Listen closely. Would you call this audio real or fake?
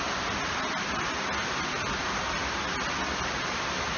real